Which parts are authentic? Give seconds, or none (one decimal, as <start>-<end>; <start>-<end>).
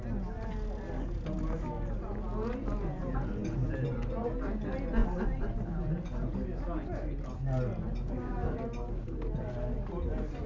0.0-10.5